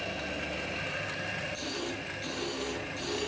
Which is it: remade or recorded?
recorded